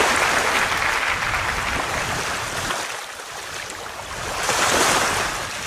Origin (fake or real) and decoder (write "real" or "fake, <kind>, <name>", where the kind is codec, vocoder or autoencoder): real